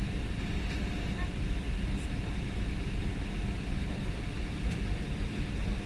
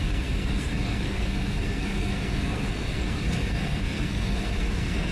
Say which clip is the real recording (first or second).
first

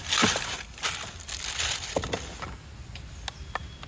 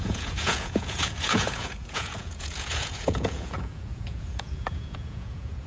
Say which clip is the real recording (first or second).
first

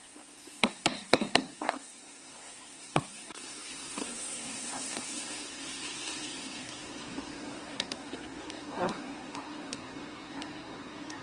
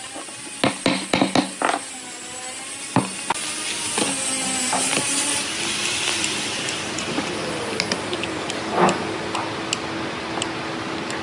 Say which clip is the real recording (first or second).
second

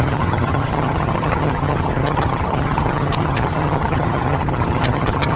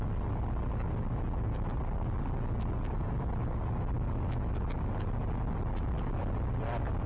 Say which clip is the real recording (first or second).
second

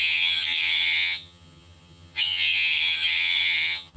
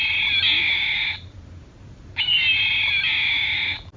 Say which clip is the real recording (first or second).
second